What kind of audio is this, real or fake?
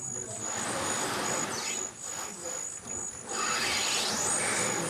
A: real